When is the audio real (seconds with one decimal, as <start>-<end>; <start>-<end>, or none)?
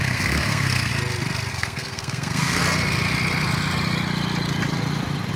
0.9-1.5; 2.6-5.4